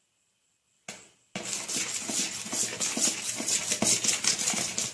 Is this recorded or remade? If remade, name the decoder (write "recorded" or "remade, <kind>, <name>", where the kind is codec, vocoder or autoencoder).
recorded